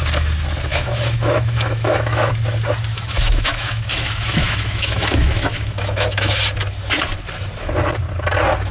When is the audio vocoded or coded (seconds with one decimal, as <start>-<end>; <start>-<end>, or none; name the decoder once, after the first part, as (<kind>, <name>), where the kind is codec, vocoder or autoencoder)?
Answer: 0.7-2.3 (autoencoder, DAC-VAE); 2.9-6.5